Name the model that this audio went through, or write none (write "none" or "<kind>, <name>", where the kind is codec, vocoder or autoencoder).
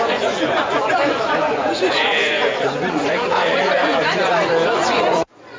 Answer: vocoder, Vocos